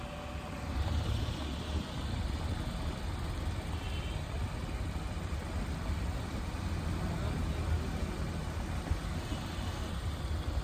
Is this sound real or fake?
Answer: real